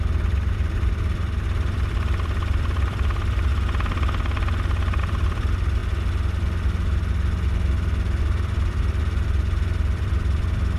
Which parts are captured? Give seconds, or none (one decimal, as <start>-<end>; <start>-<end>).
3.5-5.0; 5.8-8.2